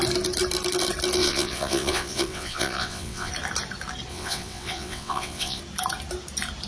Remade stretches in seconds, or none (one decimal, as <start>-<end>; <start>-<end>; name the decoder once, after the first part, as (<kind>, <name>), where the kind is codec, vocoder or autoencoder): 1.2-3.3 (vocoder, WaveNeXt); 4.1-5.6